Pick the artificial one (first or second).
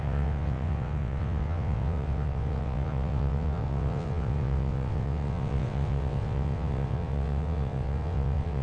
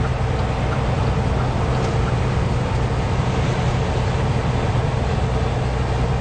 first